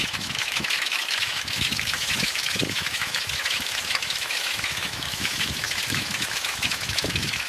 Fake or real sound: fake